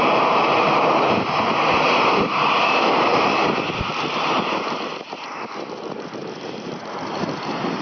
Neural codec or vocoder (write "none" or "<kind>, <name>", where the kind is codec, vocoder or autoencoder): none